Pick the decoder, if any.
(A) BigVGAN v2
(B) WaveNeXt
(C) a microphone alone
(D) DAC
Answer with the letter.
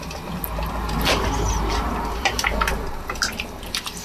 C